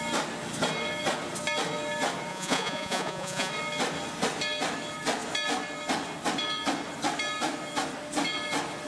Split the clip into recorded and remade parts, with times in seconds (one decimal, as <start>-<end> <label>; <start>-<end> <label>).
0.0-2.3 recorded; 2.3-3.5 remade; 3.5-8.9 recorded